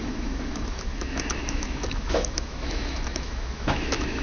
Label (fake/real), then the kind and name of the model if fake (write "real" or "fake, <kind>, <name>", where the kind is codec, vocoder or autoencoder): fake, autoencoder, DAC-VAE